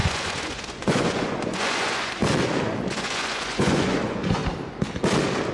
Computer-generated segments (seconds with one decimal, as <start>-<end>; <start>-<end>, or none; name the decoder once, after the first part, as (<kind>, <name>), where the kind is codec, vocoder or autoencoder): 0.0-2.2 (vocoder, Vocos); 2.8-4.4